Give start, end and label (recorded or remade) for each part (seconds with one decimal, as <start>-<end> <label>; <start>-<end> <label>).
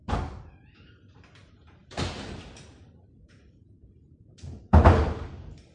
0.0-0.9 recorded; 0.9-5.7 remade